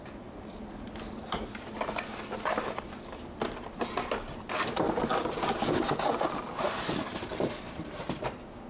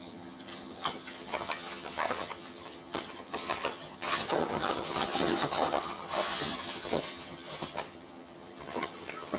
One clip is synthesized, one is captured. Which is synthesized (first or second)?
second